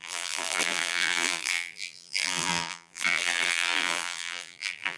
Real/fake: fake